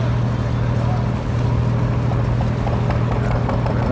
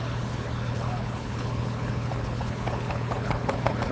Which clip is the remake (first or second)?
second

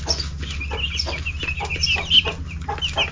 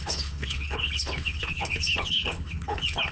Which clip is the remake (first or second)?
second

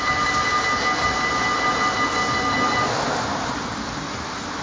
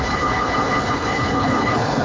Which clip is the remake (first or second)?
second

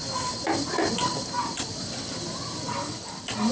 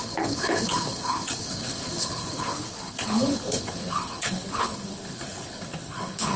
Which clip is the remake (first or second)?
second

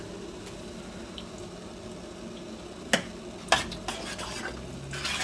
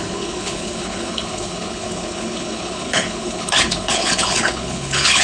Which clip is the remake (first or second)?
second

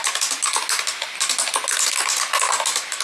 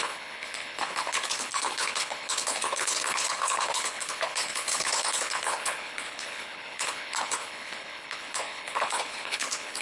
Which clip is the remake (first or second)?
second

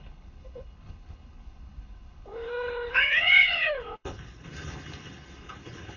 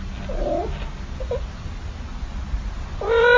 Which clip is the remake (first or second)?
first